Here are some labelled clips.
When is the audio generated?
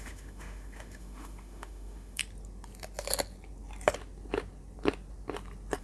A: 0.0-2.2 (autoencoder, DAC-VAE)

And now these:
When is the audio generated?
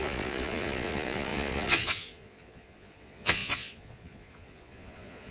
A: 0.0-5.3 (vocoder, Vocos)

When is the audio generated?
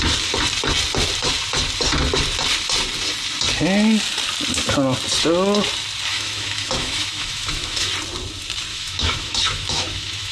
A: 6.1-7.9 (autoencoder, DAC-VAE); 8.7-10.3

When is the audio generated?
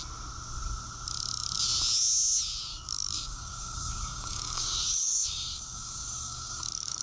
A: 2.7-7.0 (codec, DAC)